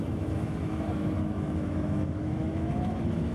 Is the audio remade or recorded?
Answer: remade